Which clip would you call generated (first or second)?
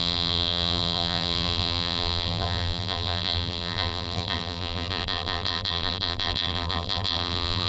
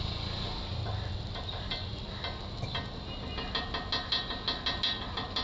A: first